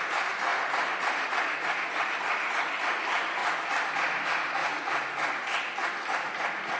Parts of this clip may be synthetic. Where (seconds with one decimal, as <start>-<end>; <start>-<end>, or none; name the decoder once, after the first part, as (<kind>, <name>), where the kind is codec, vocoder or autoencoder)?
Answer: 0.5-3.0 (vocoder, BigVGAN v2)